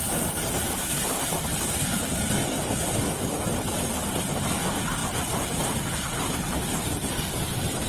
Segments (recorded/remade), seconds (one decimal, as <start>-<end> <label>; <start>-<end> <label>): 0.0-0.6 recorded; 0.6-4.3 remade; 4.3-5.0 recorded; 5.0-6.3 remade; 6.3-7.9 recorded